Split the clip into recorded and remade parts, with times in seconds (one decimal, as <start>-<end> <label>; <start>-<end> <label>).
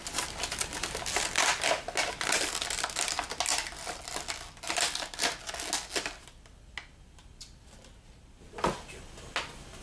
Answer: 0.0-9.8 recorded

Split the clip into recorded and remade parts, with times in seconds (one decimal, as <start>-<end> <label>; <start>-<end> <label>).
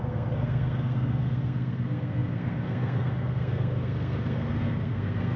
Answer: 0.0-5.4 remade